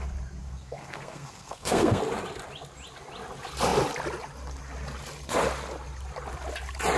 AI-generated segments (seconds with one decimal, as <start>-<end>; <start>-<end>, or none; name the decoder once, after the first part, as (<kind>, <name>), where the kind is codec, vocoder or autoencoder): 0.4-2.0 (codec, SNAC)